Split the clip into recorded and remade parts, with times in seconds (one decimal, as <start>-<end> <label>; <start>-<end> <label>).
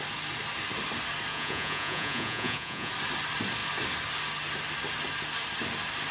0.0-1.3 recorded; 1.3-2.9 remade; 2.9-6.1 recorded